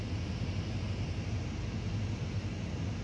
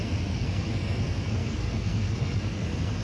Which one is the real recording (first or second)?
first